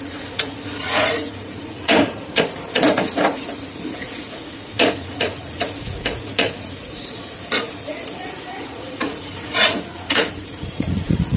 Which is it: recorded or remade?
remade